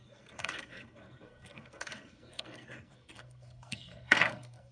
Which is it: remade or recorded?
remade